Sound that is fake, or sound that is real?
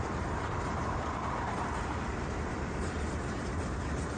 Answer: fake